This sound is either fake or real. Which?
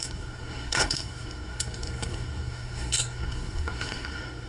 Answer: fake